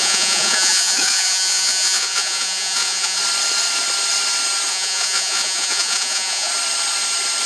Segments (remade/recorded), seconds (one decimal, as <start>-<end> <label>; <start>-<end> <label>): 0.0-3.2 remade; 3.2-4.7 recorded; 4.7-6.5 remade; 6.5-7.5 recorded